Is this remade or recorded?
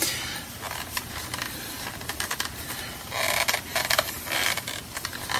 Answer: recorded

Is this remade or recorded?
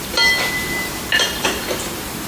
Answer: recorded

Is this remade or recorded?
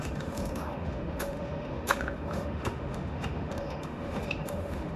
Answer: remade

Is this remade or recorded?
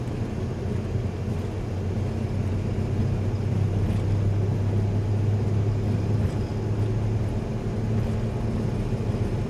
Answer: recorded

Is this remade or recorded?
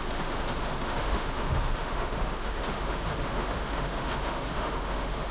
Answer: remade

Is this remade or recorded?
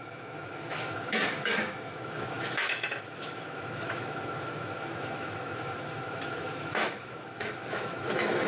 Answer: remade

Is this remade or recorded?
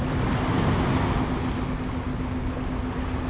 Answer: recorded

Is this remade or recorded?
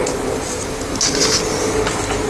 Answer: recorded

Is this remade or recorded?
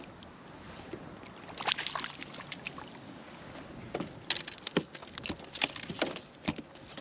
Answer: recorded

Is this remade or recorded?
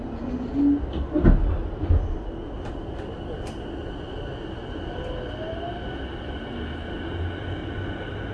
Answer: recorded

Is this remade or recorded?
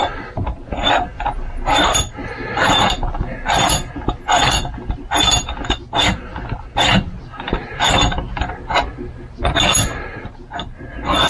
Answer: recorded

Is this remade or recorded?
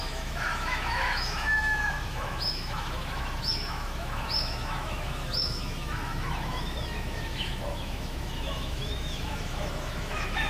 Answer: remade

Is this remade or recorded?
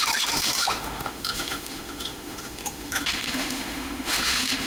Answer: remade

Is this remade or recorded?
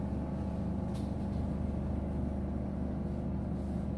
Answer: recorded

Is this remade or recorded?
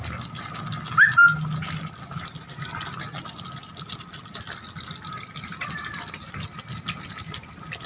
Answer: recorded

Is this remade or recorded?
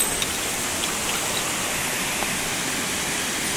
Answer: recorded